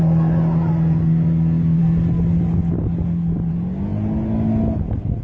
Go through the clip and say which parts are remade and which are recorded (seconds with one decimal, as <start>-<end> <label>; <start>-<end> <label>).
0.0-5.2 recorded